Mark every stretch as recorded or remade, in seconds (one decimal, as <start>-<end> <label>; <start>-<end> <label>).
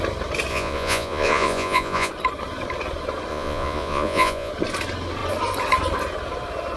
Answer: 0.0-0.5 recorded; 0.5-2.1 remade; 2.1-3.3 recorded; 3.3-4.5 remade; 4.5-6.8 recorded